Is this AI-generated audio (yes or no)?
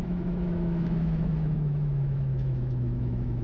yes